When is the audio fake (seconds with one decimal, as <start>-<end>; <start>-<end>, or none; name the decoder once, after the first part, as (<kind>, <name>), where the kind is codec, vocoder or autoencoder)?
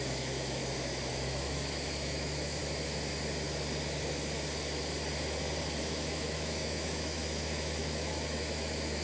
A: 0.0-0.6 (autoencoder, DAC-VAE); 1.1-2.6; 5.8-9.0